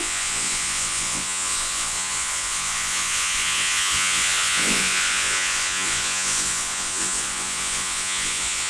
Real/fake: fake